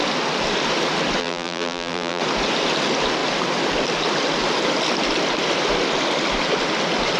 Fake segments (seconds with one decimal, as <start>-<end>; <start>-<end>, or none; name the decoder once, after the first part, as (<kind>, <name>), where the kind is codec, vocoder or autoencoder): 1.2-2.2 (vocoder, BigVGAN v2)